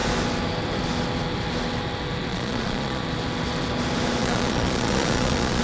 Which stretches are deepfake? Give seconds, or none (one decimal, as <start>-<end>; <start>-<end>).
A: 2.3-3.0; 4.2-5.6